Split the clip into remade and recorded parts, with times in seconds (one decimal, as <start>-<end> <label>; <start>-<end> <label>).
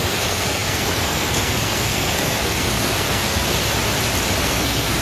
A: 0.0-3.6 remade; 3.6-4.4 recorded; 4.4-5.0 remade